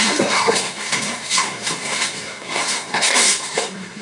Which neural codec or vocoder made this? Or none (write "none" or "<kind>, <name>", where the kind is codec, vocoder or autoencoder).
codec, SNAC